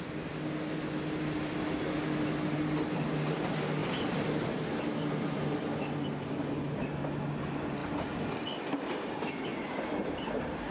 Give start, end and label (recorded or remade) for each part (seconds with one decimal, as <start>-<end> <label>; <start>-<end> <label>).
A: 0.0-3.8 recorded; 3.8-4.8 remade; 4.8-10.7 recorded